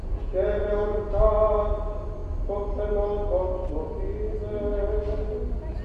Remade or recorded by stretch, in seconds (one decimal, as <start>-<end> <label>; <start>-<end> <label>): 0.0-1.0 remade; 1.0-5.8 recorded